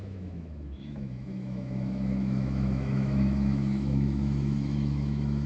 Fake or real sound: fake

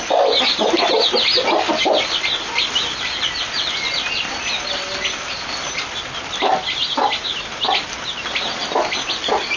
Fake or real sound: real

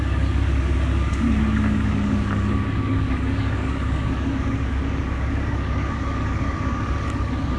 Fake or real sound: fake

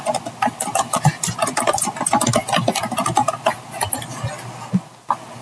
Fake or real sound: real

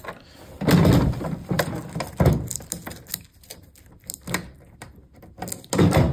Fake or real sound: real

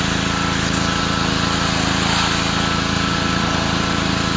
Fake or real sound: real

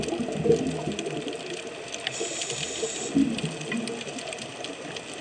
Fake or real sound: real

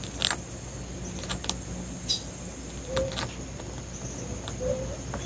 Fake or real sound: real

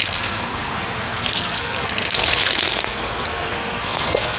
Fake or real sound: fake